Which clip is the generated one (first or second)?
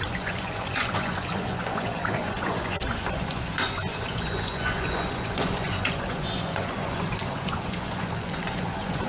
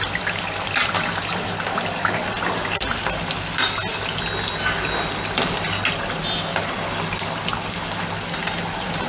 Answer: first